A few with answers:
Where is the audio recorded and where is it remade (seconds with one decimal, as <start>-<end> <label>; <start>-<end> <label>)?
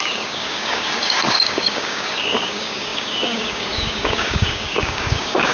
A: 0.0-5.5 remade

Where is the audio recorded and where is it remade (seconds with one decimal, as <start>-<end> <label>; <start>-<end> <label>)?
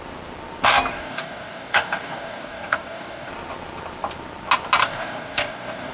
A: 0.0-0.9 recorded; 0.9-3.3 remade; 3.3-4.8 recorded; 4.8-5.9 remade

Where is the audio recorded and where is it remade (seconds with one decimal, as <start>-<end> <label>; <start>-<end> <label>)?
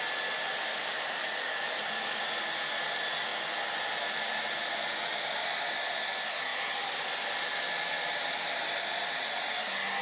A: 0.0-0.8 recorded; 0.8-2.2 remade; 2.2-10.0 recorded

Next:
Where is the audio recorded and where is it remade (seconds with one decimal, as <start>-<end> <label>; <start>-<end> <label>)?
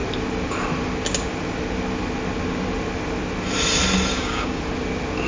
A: 0.0-4.1 recorded; 4.1-4.6 remade; 4.6-5.3 recorded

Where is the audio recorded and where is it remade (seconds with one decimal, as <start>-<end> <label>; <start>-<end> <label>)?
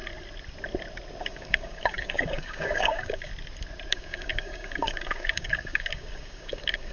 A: 0.0-1.2 recorded; 1.2-3.3 remade; 3.3-3.9 recorded; 3.9-6.9 remade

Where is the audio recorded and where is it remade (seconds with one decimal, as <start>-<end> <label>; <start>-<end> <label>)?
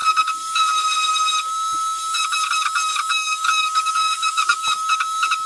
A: 0.0-3.1 recorded; 3.1-4.6 remade; 4.6-5.5 recorded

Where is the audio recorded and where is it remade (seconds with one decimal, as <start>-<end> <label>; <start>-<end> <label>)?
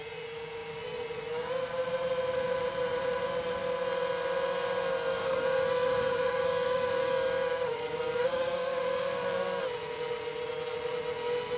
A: 0.0-5.2 recorded; 5.2-9.6 remade; 9.6-11.6 recorded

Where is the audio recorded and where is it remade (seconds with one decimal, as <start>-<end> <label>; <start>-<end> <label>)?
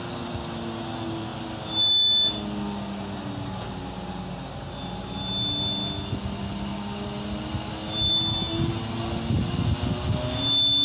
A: 0.0-8.1 recorded; 8.1-8.7 remade; 8.7-10.8 recorded